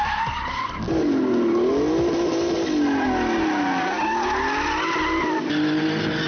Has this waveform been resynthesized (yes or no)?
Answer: no